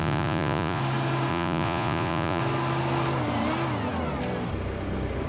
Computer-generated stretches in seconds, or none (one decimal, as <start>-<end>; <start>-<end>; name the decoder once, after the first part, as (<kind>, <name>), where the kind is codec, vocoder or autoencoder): 0.0-0.8 (vocoder, Vocos); 1.3-2.4